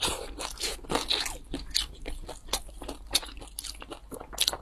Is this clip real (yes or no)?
yes